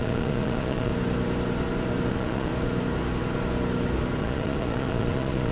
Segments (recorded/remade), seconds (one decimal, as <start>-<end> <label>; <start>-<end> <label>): 0.0-0.9 remade; 0.9-2.1 recorded; 2.1-2.5 remade; 2.5-4.2 recorded; 4.2-5.5 remade